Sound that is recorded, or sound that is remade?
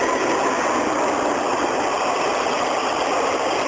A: recorded